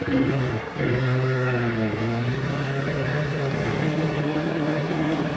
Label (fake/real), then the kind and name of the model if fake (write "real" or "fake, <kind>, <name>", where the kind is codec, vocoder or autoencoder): fake, codec, SNAC